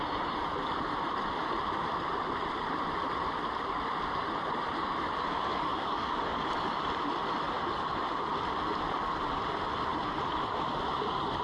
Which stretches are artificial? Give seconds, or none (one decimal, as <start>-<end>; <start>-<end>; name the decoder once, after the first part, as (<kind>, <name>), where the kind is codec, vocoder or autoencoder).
5.5-6.5 (codec, DAC)